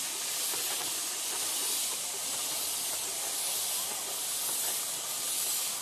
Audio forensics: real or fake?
real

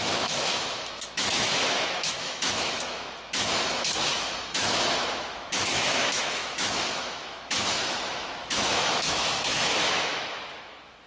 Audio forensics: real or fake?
fake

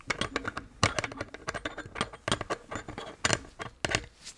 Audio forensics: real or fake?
real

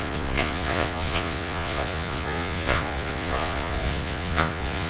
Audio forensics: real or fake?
fake